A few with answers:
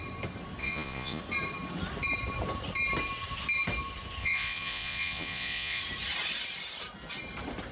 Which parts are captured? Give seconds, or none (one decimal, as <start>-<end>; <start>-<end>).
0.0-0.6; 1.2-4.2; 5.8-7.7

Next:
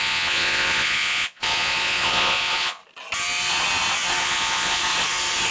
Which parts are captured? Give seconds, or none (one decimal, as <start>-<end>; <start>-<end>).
2.8-4.2; 4.8-5.5

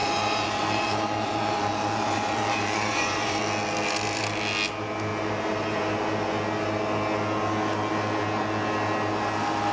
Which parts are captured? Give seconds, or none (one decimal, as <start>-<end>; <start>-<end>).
3.4-9.7